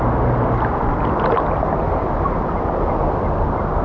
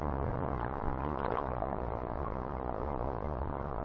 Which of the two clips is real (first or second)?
first